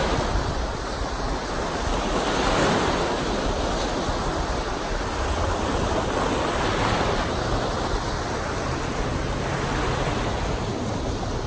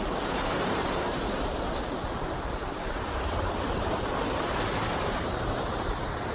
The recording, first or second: first